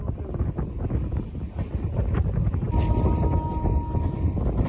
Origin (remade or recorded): recorded